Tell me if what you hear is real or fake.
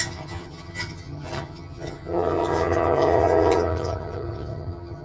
fake